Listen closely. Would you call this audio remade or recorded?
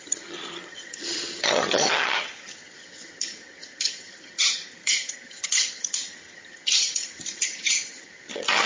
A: remade